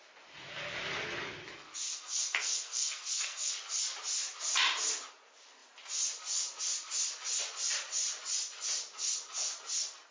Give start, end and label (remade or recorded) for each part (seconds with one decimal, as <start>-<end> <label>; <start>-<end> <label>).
0.0-1.8 recorded; 1.8-3.5 remade; 3.5-10.1 recorded